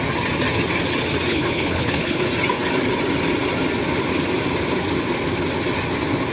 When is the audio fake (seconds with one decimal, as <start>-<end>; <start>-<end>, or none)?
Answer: 1.3-2.2